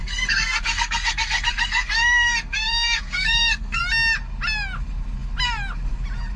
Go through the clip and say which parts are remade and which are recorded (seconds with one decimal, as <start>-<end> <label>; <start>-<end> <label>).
0.0-3.8 remade; 3.8-6.4 recorded